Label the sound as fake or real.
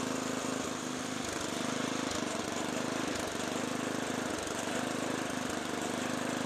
real